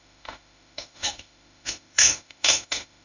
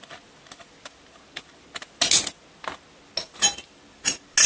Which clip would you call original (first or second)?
second